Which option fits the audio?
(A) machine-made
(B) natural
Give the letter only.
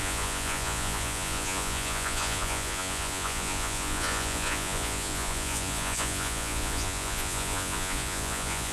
A